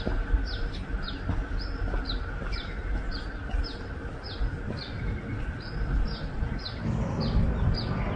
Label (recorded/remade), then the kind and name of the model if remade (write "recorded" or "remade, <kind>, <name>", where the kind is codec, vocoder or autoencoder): recorded